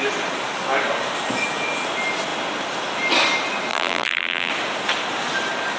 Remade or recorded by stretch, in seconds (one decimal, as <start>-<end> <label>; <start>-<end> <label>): 0.0-3.7 recorded; 3.7-4.5 remade; 4.5-5.8 recorded